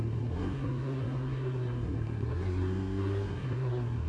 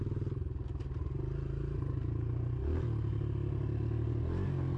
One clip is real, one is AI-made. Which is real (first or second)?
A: second